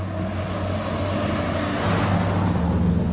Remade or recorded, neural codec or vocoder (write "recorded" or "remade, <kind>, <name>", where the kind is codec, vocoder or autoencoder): recorded